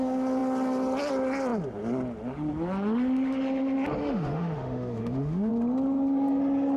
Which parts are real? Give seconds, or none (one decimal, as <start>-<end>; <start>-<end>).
0.0-4.0; 5.5-6.8